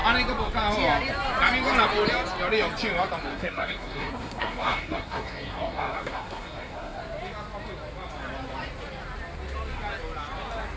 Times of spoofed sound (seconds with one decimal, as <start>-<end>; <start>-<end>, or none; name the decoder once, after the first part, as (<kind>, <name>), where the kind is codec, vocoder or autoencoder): 3.3-7.0 (codec, SNAC)